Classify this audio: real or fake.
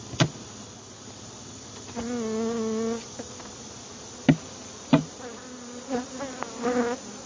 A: real